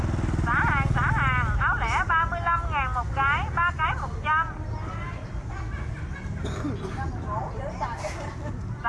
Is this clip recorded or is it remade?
recorded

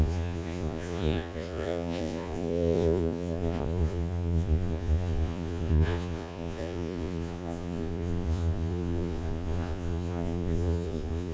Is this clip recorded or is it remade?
remade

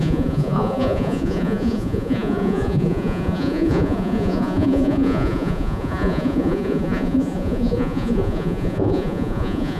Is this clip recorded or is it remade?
remade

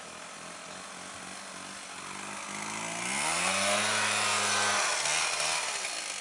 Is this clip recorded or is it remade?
recorded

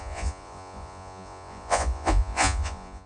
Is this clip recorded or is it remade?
remade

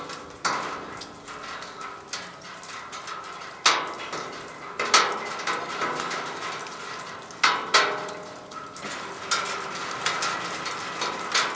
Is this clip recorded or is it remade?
recorded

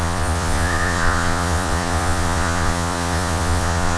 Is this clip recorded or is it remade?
remade